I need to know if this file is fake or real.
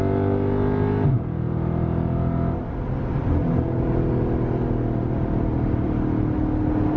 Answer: real